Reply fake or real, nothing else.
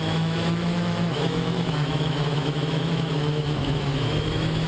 fake